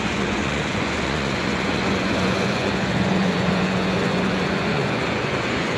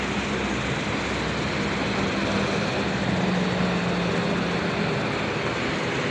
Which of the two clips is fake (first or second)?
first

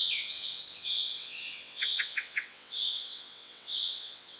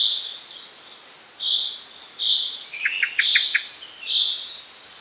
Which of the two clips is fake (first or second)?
first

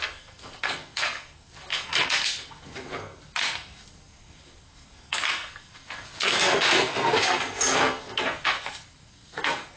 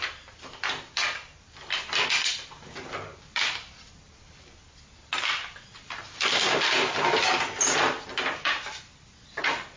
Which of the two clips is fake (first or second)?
first